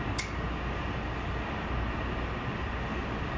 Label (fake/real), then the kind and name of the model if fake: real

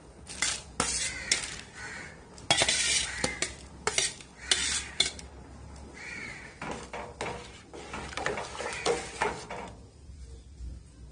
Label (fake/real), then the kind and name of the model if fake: real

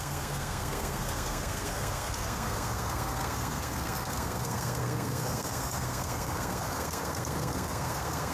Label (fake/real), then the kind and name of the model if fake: fake, codec, SNAC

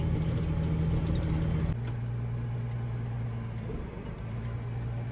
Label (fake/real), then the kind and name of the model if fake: real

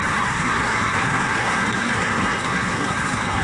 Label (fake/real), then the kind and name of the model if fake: fake, codec, SNAC